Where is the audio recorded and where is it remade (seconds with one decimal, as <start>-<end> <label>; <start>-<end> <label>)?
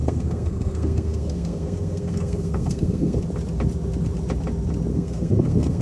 0.0-3.2 remade; 3.2-4.9 recorded; 4.9-5.8 remade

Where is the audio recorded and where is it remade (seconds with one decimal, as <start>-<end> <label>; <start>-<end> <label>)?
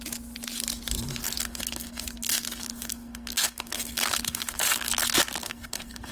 0.0-1.2 recorded; 1.2-4.9 remade; 4.9-5.4 recorded; 5.4-6.1 remade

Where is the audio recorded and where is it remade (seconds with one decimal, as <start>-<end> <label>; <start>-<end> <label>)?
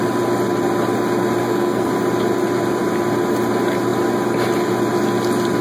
0.0-1.4 recorded; 1.4-1.9 remade; 1.9-5.6 recorded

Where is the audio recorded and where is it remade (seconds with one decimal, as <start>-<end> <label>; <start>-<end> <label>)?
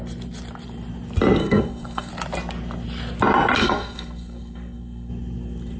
0.0-1.4 recorded; 1.4-2.1 remade; 2.1-3.6 recorded; 3.6-5.1 remade; 5.1-5.8 recorded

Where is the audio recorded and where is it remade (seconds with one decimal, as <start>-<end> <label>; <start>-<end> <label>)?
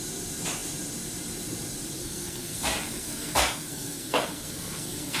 0.0-2.0 recorded; 2.0-5.2 remade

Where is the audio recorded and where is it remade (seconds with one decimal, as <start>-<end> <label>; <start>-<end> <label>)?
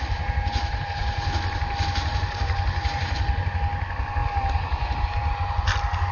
0.0-6.1 recorded